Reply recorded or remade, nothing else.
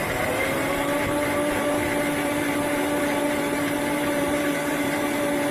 remade